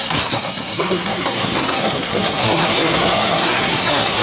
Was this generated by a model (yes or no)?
yes